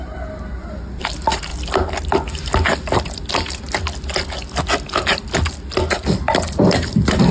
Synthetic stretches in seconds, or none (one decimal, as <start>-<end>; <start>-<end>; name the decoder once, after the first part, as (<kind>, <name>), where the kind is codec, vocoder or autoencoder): none